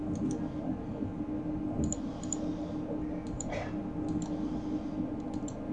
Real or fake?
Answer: real